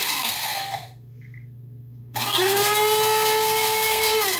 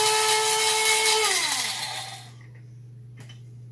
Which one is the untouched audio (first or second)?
second